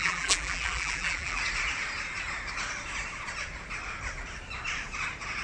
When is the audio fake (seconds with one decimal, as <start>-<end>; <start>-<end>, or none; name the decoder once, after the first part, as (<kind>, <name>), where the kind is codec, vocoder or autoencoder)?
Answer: 0.0-1.4 (vocoder, BigVGAN v2)